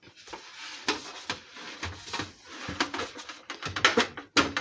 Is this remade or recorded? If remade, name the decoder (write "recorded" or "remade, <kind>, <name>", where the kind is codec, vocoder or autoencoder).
recorded